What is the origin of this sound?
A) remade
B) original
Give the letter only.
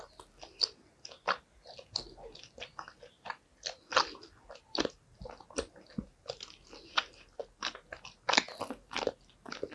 B